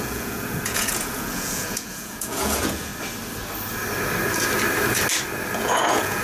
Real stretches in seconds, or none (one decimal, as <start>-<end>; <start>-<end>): 2.9-5.6